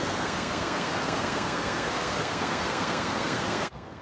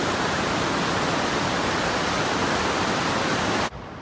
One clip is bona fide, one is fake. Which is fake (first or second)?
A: first